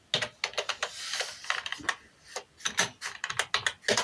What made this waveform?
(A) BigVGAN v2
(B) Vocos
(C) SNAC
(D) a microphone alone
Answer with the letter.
D